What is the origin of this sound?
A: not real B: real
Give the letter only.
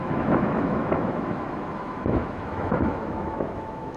A